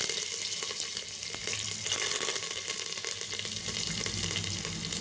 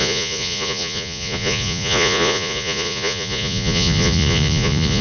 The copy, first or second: second